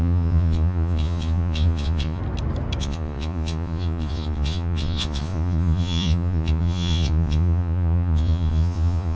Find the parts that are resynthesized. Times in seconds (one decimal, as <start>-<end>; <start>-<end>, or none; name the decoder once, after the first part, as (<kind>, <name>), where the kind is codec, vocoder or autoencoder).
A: 0.0-2.2 (vocoder, Vocos); 2.8-9.2